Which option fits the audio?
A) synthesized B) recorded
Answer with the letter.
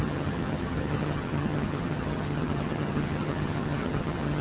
A